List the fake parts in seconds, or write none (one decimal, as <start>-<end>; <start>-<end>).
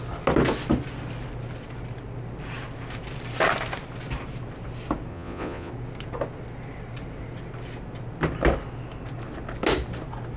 5.1-5.7